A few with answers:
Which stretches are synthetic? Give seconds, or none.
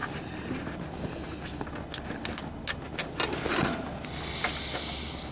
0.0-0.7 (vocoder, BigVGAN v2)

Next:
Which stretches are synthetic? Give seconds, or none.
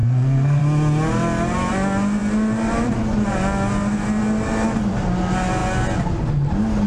0.0-0.6 (codec, SNAC)